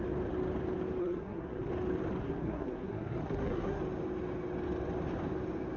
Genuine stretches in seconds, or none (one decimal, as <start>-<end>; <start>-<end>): 0.0-1.0; 1.7-2.2; 3.8-5.8